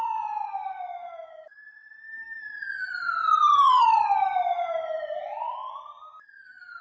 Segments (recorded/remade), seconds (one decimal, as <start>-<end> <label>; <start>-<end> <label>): 0.0-2.4 recorded; 2.4-5.1 remade; 5.1-5.6 recorded; 5.6-6.8 remade